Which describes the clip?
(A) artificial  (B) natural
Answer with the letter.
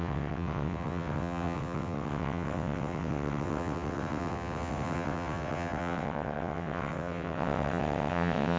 A